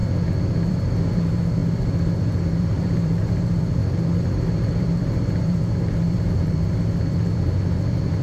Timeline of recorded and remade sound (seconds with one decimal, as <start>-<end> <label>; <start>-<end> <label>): 0.0-0.7 recorded; 0.7-1.6 remade; 1.6-2.6 recorded; 2.6-3.8 remade; 3.8-4.4 recorded; 4.4-8.2 remade